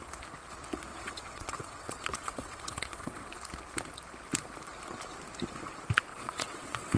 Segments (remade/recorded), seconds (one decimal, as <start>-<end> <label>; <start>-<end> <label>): 0.0-0.9 recorded; 0.9-3.3 remade; 3.3-6.1 recorded; 6.1-7.0 remade